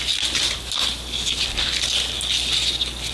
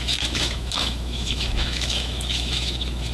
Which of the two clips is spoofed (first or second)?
second